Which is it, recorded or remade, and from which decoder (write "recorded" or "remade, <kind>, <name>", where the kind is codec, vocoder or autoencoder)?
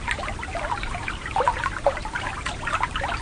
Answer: remade, vocoder, BigVGAN v2